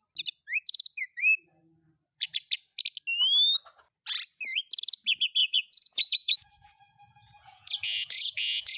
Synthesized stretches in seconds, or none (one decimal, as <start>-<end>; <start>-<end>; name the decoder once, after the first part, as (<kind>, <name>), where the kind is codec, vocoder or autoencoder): 5.4-8.8 (vocoder, Vocos)